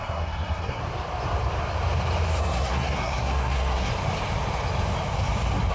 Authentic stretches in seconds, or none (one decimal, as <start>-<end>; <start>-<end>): 0.8-2.4; 3.9-5.7